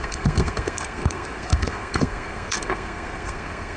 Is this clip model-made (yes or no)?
yes